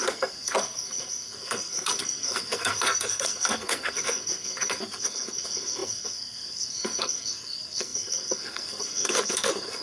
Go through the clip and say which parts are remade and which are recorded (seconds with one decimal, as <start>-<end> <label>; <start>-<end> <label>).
0.0-9.8 remade